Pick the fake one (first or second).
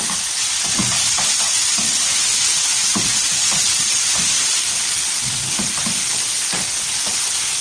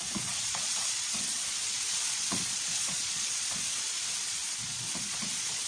second